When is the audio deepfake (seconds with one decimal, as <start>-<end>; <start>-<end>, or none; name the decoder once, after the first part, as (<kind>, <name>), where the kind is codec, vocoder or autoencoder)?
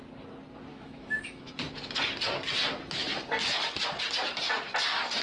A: 0.7-1.5 (autoencoder, DAC-VAE)